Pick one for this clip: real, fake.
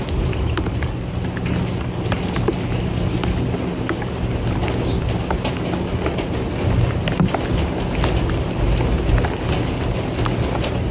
real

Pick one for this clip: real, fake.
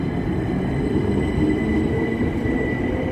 real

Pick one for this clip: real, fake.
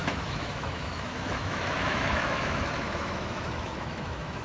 fake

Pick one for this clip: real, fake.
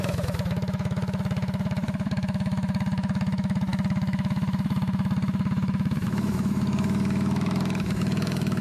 fake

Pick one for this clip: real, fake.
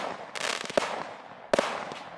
real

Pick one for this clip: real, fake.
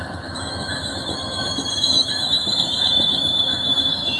fake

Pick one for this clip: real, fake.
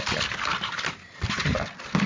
real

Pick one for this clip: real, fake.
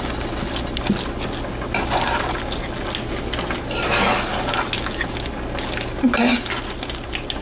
real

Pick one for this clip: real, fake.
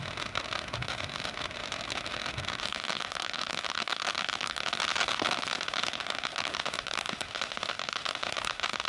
fake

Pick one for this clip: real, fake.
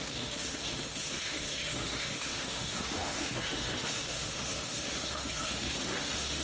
fake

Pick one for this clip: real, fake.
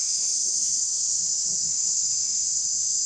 fake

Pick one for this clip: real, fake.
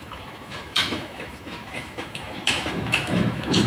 fake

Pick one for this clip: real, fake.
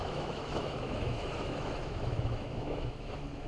fake